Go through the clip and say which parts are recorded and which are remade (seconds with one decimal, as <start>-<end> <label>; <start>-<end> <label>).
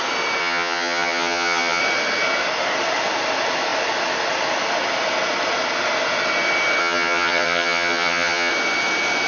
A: 0.0-0.4 recorded; 0.4-1.8 remade; 1.8-6.8 recorded; 6.8-8.5 remade; 8.5-9.3 recorded